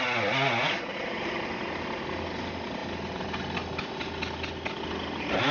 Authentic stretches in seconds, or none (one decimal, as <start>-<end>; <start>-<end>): 0.0-5.5